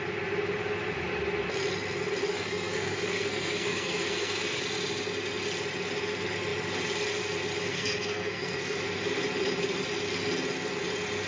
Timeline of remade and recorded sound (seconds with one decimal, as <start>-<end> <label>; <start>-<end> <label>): 0.0-2.3 recorded; 2.3-4.6 remade; 4.6-7.7 recorded; 7.7-8.8 remade; 8.8-11.3 recorded